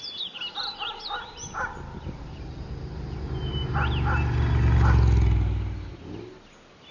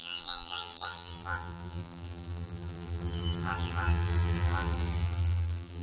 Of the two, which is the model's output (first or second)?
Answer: second